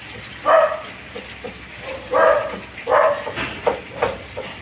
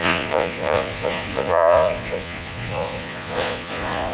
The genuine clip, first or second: first